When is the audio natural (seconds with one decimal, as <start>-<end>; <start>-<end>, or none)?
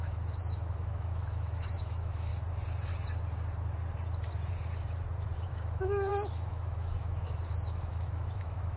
2.3-5.5